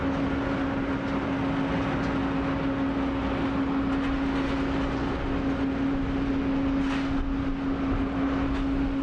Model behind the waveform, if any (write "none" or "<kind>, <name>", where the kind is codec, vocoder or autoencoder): none